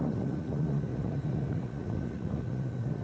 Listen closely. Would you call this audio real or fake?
fake